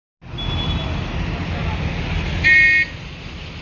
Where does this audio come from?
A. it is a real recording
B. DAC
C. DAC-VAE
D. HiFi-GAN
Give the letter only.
A